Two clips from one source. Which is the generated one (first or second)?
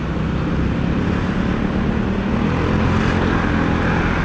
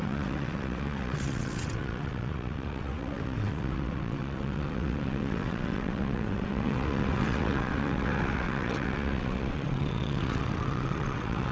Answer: second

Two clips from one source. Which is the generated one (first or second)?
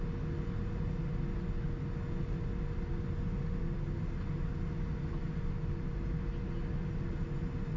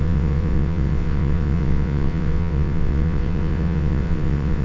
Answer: second